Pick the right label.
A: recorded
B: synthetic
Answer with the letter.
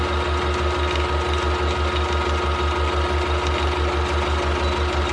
A